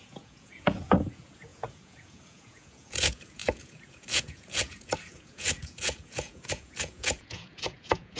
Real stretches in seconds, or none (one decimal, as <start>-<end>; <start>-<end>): none